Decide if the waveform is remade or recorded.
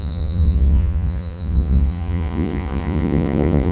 remade